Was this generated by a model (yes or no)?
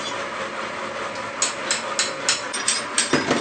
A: no